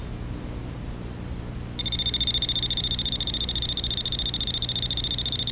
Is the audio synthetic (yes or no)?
no